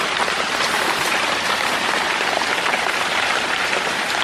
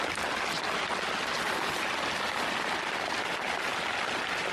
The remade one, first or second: first